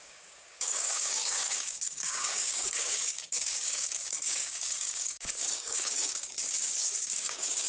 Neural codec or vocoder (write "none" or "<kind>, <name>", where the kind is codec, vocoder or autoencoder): codec, DAC